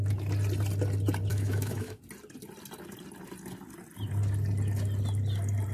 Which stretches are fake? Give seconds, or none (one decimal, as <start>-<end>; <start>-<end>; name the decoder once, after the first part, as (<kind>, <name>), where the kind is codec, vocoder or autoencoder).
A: 1.3-2.0 (autoencoder, DAC-VAE)